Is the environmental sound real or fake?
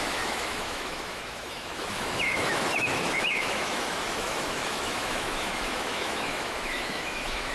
fake